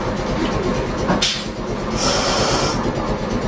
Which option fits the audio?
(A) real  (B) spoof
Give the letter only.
A